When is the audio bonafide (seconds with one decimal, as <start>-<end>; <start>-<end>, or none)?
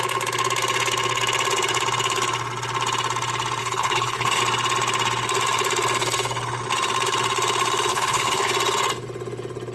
0.0-3.6; 4.4-7.9; 8.5-9.7